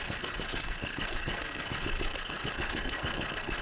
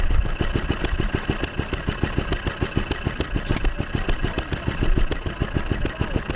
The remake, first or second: first